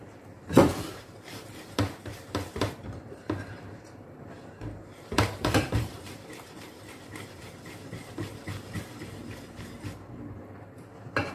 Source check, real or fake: fake